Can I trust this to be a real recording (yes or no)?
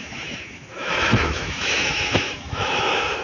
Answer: no